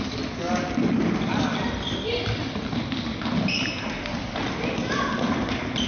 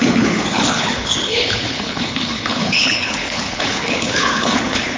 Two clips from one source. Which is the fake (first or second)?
second